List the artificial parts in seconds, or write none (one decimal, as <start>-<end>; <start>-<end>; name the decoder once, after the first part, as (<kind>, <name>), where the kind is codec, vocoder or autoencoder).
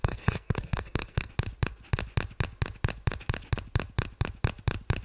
0.0-1.3 (codec, SNAC)